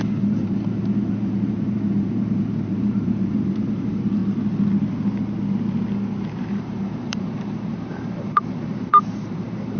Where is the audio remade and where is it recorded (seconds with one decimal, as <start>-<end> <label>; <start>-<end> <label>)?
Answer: 0.0-4.2 remade; 4.2-6.4 recorded; 6.4-9.8 remade